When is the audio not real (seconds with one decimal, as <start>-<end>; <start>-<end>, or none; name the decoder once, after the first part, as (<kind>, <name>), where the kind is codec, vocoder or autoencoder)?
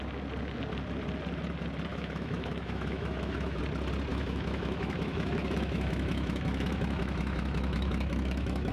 1.9-3.6 (autoencoder, DAC-VAE); 4.1-8.7